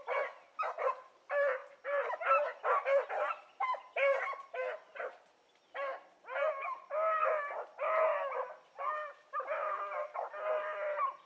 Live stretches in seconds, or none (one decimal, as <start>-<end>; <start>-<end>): 0.0-11.3